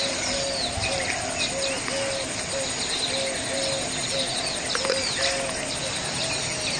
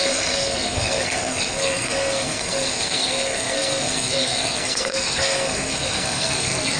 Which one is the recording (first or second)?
first